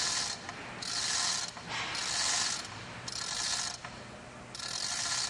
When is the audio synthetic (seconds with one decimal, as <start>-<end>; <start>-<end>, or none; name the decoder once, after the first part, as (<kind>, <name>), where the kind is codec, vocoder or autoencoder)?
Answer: none